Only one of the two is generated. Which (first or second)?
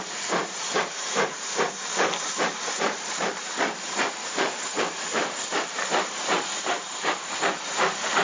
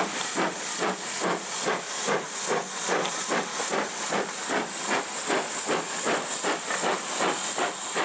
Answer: first